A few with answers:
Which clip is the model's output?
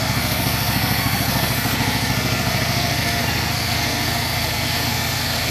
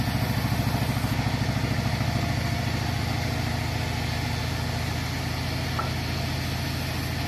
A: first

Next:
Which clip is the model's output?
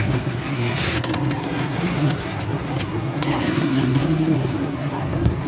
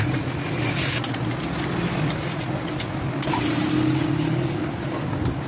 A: first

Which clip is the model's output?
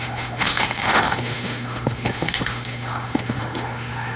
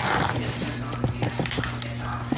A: first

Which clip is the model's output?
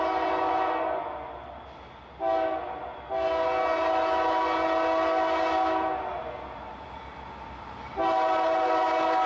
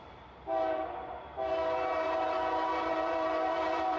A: second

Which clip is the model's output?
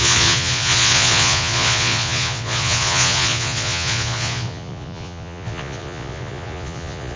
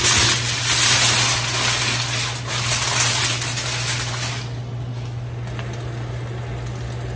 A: first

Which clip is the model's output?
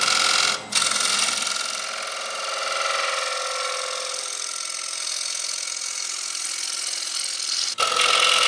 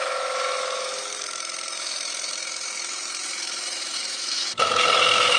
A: second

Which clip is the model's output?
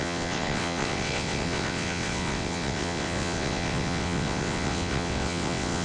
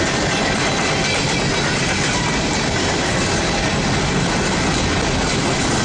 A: first